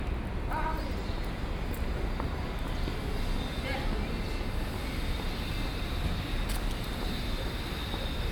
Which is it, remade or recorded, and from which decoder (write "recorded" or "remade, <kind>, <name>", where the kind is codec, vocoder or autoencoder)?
recorded